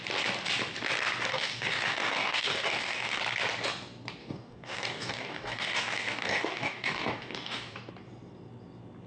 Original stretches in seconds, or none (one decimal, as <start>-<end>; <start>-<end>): 0.0-1.3; 3.2-4.2; 7.9-9.1